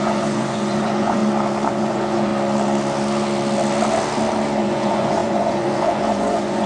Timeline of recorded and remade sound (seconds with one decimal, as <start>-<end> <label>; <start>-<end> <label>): 0.0-1.2 remade; 1.2-1.7 recorded; 1.7-2.3 remade; 2.3-4.6 recorded; 4.6-6.7 remade

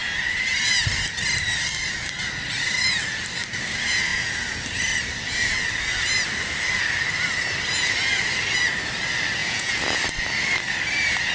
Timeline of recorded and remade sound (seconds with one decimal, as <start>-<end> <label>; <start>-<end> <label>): 0.0-9.4 recorded; 9.4-10.0 remade; 10.0-11.3 recorded